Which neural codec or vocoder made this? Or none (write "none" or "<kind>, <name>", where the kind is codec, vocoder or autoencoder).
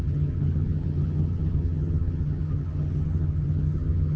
vocoder, HiFi-GAN